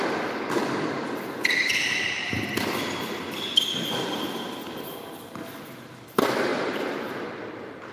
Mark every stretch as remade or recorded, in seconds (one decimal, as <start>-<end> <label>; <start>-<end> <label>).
0.0-6.5 recorded; 6.5-7.1 remade; 7.1-7.9 recorded